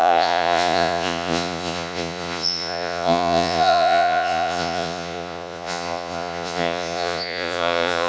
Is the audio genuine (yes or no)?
no